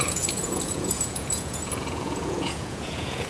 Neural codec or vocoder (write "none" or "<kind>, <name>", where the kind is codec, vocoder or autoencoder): vocoder, Vocos